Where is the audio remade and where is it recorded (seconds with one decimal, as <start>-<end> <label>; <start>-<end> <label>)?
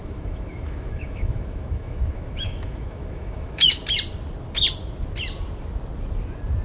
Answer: 0.0-3.8 remade; 3.8-6.6 recorded